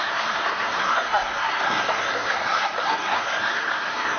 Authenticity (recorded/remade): remade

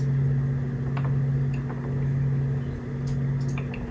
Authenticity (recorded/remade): recorded